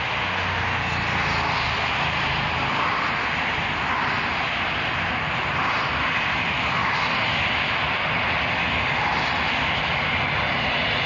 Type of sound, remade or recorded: recorded